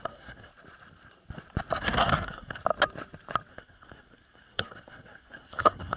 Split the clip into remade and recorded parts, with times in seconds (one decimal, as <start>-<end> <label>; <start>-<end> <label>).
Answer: 0.0-0.5 remade; 0.5-1.8 recorded; 1.8-2.6 remade; 2.6-3.5 recorded; 3.5-6.0 remade